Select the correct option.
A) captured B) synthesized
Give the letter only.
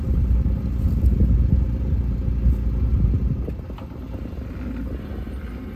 A